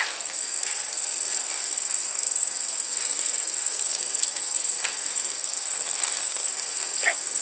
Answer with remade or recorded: remade